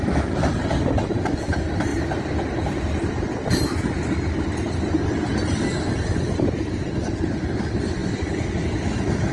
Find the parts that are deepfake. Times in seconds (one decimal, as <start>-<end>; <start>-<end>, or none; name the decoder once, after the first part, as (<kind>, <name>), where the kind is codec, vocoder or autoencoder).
none